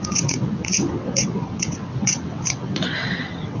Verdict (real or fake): fake